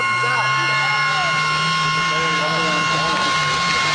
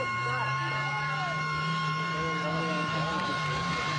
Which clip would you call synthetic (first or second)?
second